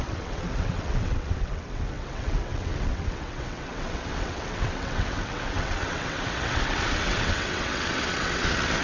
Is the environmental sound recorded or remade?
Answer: remade